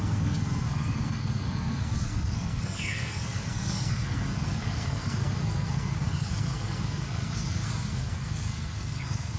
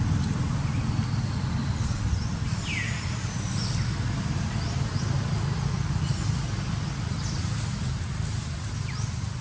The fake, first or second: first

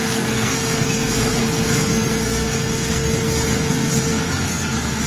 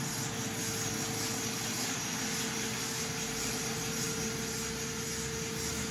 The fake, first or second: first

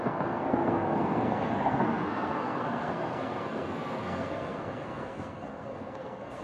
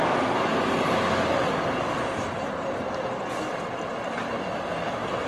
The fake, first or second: first